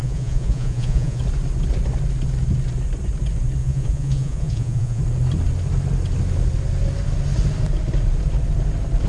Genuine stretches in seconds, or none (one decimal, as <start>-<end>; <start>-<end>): 1.2-3.6; 5.0-9.1